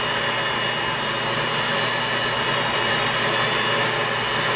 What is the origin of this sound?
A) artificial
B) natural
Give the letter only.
B